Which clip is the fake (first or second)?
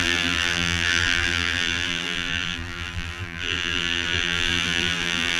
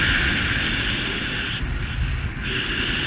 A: first